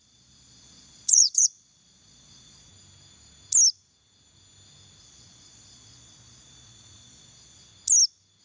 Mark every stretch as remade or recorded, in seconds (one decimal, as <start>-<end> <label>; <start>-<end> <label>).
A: 0.0-2.7 remade; 2.7-5.0 recorded; 5.0-7.7 remade; 7.7-8.4 recorded